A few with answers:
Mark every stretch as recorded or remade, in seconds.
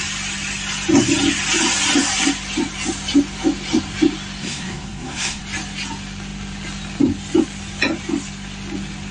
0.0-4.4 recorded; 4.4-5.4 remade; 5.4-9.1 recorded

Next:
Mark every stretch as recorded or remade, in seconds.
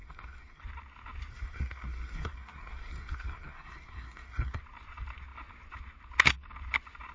0.0-0.6 remade; 0.6-1.3 recorded; 1.3-4.6 remade; 4.6-7.1 recorded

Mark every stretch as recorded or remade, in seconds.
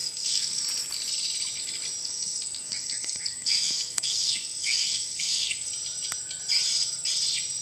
0.0-0.6 remade; 0.6-2.0 recorded; 2.0-5.7 remade; 5.7-7.6 recorded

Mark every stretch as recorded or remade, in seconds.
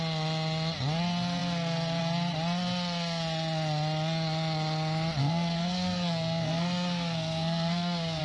0.0-5.2 recorded; 5.2-8.2 remade